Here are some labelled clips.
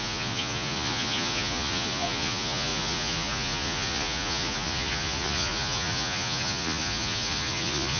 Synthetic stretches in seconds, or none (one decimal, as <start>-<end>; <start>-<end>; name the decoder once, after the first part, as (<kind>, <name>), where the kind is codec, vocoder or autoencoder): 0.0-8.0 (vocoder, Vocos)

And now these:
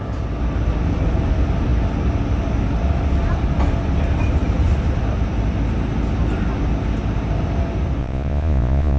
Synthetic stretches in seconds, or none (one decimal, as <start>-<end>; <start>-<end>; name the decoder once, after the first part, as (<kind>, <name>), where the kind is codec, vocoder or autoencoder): 8.0-9.0 (vocoder, Vocos)

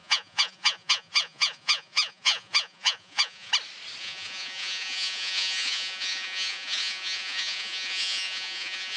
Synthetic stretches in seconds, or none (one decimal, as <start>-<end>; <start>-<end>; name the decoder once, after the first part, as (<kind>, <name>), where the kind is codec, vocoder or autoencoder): 0.0-3.5 (vocoder, Vocos); 4.0-9.0

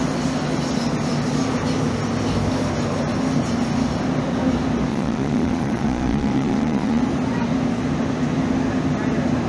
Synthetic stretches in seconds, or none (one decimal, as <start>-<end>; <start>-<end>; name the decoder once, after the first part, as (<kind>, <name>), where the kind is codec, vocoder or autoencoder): 4.9-7.0 (vocoder, Vocos)

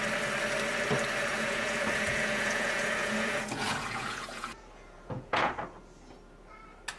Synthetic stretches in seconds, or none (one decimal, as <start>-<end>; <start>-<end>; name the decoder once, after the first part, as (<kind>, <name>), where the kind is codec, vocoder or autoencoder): 1.3-5.5 (vocoder, Vocos)

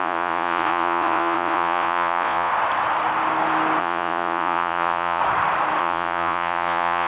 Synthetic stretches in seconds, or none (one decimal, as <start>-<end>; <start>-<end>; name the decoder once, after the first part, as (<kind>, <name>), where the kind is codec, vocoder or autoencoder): 0.0-2.5 (vocoder, Vocos); 3.8-5.2; 5.8-7.1

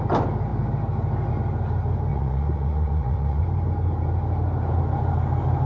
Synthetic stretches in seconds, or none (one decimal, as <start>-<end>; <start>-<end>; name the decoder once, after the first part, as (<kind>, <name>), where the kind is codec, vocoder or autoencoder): 2.1-3.4 (vocoder, Vocos)